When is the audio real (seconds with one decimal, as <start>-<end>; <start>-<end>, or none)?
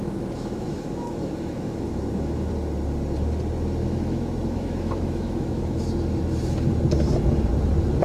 2.5-3.8; 5.9-8.0